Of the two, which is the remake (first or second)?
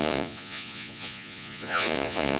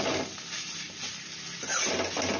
first